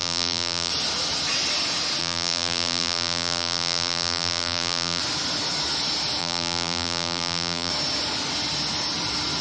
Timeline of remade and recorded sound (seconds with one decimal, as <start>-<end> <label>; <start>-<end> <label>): 0.0-0.7 remade; 0.7-2.0 recorded; 2.0-5.0 remade; 5.0-6.2 recorded; 6.2-7.7 remade; 7.7-9.4 recorded

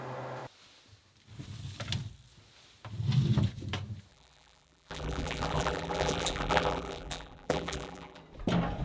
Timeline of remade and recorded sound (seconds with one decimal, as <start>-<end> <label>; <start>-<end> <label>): 0.0-4.1 recorded; 4.1-8.2 remade; 8.2-8.8 recorded

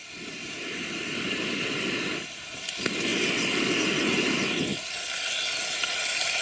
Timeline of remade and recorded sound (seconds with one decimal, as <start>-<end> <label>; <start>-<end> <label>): 0.0-6.4 recorded

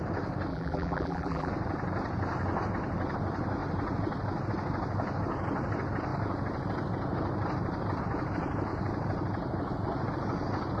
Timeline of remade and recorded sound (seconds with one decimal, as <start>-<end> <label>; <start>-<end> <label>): 0.0-0.5 recorded; 0.5-1.5 remade; 1.5-10.8 recorded

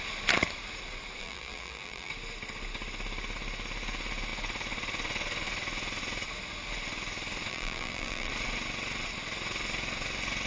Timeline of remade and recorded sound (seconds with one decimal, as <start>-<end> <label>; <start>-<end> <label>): 0.0-1.2 recorded; 1.2-2.1 remade; 2.1-7.5 recorded; 7.5-8.3 remade; 8.3-10.5 recorded

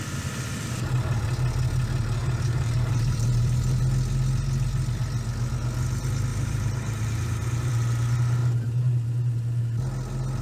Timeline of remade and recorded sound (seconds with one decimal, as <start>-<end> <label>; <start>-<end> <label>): 0.0-2.2 recorded; 2.2-3.8 remade; 3.8-6.3 recorded; 6.3-7.7 remade; 7.7-10.4 recorded

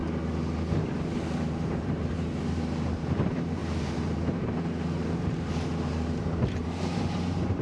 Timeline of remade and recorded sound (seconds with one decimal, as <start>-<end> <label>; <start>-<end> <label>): 0.0-0.8 recorded; 0.8-7.6 remade

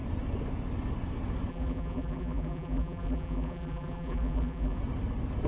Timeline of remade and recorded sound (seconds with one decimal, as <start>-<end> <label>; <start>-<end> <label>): 0.0-1.5 recorded; 1.5-4.8 remade; 4.8-5.5 recorded